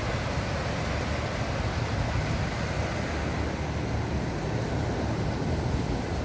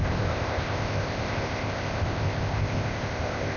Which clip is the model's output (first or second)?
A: second